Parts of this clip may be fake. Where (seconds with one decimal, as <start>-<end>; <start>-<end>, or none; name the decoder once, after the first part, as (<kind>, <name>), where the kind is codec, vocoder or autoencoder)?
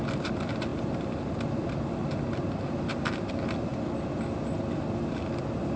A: none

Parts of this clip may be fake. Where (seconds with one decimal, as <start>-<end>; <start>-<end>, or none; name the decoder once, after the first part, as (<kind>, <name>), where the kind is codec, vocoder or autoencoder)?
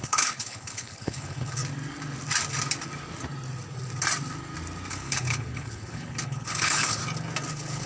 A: 0.0-1.6 (codec, HILCodec); 4.9-7.0; 7.5-7.9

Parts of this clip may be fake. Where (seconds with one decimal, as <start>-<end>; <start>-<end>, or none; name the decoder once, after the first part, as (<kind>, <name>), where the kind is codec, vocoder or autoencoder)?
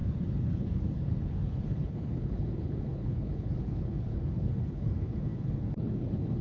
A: 0.0-6.4 (codec, HILCodec)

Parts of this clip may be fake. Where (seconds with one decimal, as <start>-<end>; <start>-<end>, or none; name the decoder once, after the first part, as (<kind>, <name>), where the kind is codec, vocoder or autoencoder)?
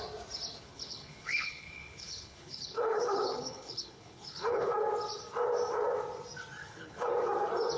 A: 0.6-4.7 (codec, HILCodec); 6.6-7.1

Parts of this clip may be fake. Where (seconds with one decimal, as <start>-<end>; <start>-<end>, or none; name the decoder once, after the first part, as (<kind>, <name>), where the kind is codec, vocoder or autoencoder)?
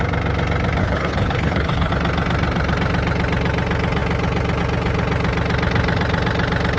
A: 0.8-1.9 (codec, HILCodec)